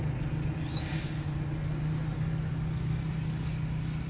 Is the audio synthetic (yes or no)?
no